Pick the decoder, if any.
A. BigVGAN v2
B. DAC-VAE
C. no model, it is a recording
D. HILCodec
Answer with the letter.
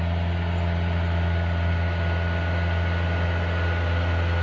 C